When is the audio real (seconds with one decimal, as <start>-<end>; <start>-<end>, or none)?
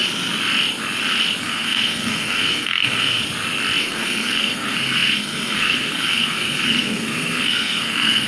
0.0-1.4; 3.2-3.8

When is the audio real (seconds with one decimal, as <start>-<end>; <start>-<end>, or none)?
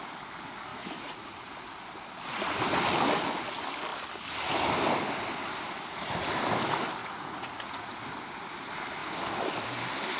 0.0-0.7; 1.5-7.0; 7.9-10.2